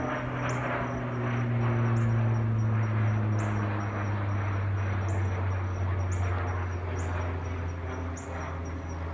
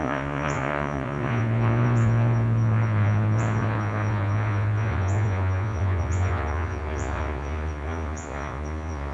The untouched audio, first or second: first